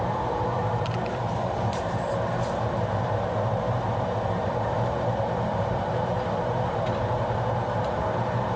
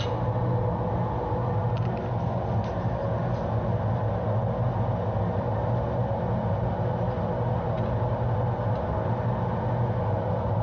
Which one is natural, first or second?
second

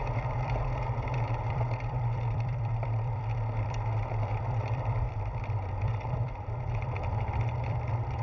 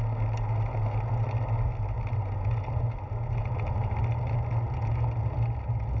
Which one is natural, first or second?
second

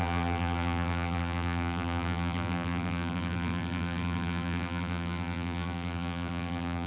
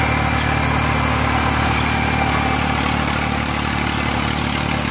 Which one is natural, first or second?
second